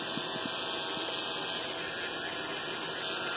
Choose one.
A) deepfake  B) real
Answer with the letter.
B